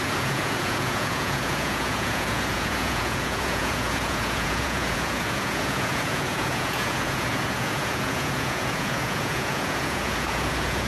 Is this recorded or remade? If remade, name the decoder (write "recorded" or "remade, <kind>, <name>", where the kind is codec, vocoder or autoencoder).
remade, vocoder, Vocos